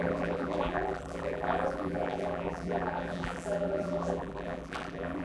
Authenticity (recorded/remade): remade